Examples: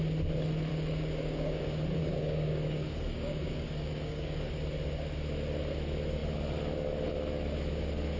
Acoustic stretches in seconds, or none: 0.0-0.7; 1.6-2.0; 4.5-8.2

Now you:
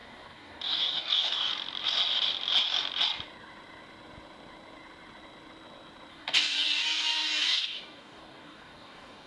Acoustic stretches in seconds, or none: 1.5-6.1

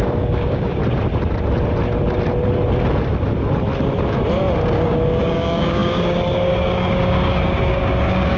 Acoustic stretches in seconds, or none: 0.8-4.6